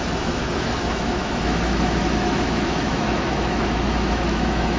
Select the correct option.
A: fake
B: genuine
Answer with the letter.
A